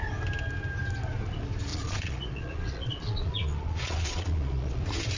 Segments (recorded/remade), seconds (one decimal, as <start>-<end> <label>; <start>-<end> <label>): 0.0-1.7 recorded; 1.7-4.8 remade; 4.8-5.2 recorded